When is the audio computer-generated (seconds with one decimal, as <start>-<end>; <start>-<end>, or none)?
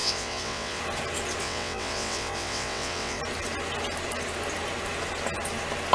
0.0-0.8; 1.4-3.2